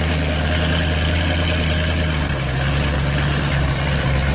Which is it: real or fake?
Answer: real